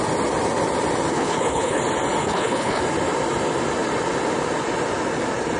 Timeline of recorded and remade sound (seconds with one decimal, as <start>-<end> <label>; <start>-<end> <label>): 0.0-1.1 recorded; 1.1-1.8 remade; 1.8-2.2 recorded; 2.2-2.8 remade; 2.8-5.6 recorded